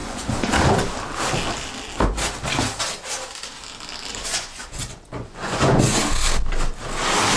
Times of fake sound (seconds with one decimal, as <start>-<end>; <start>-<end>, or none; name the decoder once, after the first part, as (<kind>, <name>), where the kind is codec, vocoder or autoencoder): 0.0-0.5 (vocoder, Vocos); 4.1-6.0